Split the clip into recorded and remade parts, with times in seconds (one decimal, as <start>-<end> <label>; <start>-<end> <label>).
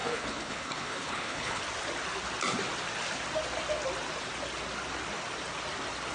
0.0-1.6 remade; 1.6-6.1 recorded